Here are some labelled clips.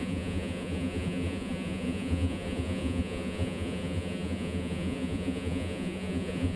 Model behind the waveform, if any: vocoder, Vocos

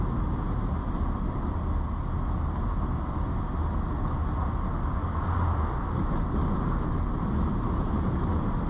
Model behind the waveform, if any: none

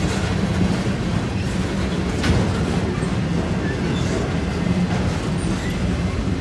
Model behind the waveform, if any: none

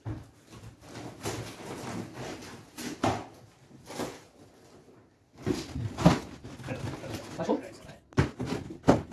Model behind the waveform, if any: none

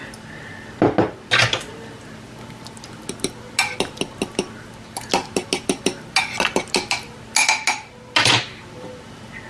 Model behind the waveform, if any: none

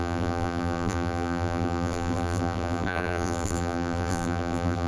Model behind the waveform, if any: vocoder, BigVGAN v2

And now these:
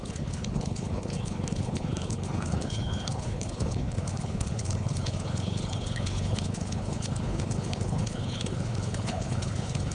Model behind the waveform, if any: codec, HILCodec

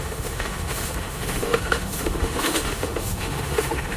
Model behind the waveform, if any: autoencoder, DAC-VAE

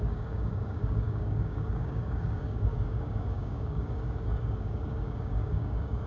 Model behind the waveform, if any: codec, DAC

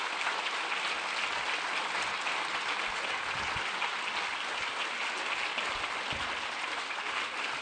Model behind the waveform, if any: none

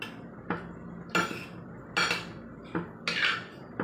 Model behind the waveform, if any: none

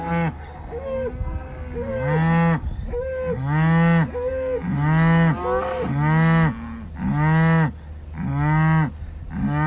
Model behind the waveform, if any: none